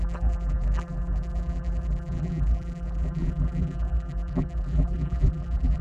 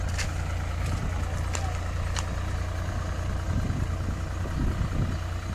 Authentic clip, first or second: second